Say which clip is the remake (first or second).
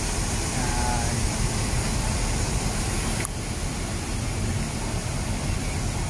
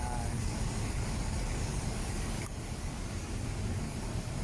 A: second